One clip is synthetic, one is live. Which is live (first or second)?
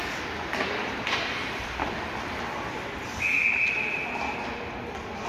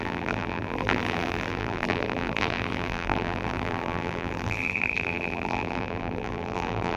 first